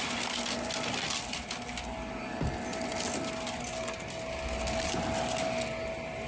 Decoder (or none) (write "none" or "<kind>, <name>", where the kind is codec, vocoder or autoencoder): none